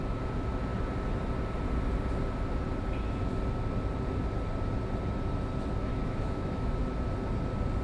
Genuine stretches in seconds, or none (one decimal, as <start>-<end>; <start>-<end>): 0.0-5.9; 6.8-7.8